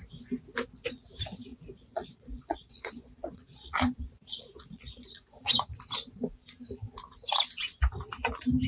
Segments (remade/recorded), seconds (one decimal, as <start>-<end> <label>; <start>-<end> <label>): 0.0-1.5 recorded; 1.5-5.7 remade; 5.7-8.7 recorded